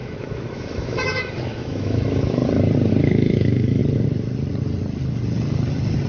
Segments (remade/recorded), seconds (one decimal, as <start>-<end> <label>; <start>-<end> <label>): 0.0-2.4 remade; 2.4-3.0 recorded; 3.0-3.8 remade; 3.8-6.1 recorded